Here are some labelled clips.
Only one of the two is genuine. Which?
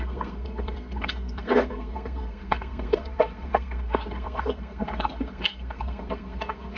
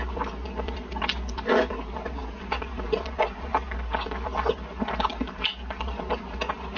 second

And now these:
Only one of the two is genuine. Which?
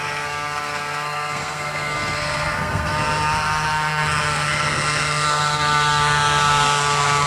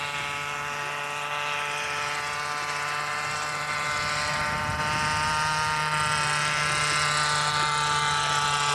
second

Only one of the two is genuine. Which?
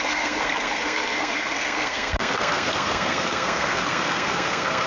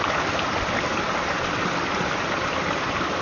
second